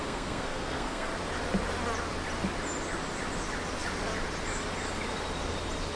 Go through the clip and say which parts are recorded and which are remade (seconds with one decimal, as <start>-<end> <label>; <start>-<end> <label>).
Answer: 0.0-1.1 remade; 1.1-6.0 recorded